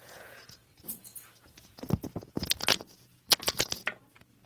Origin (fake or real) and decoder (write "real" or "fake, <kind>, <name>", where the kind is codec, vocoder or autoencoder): fake, vocoder, Vocos